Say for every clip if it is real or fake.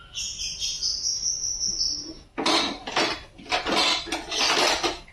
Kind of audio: real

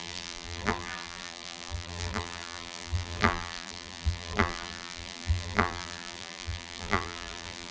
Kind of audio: fake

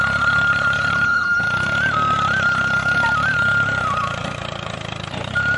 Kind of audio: fake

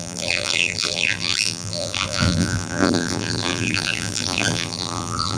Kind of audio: fake